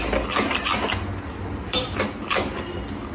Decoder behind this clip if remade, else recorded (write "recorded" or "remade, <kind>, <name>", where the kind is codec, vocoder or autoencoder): recorded